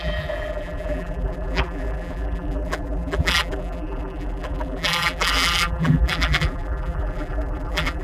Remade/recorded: remade